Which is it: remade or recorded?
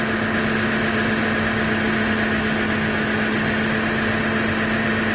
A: recorded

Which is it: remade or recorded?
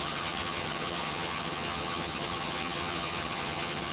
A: remade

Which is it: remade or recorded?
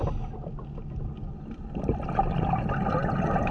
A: recorded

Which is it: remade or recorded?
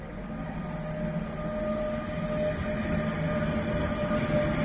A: recorded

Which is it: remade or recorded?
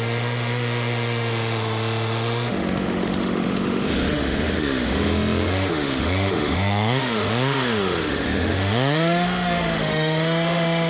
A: remade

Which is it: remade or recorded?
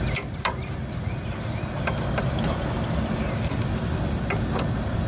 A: recorded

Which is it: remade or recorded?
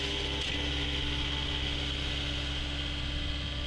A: recorded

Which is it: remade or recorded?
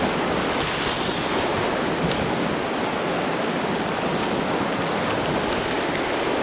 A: recorded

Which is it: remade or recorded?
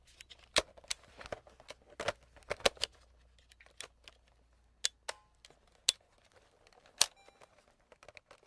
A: recorded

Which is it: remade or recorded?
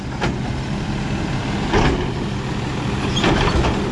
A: recorded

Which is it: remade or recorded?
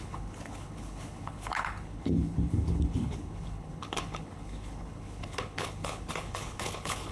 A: remade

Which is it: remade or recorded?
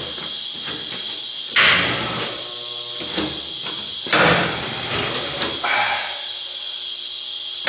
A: recorded